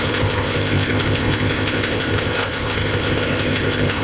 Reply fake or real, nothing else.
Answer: fake